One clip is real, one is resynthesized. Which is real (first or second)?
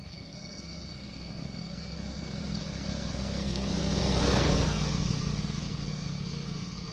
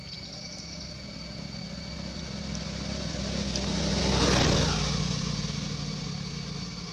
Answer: second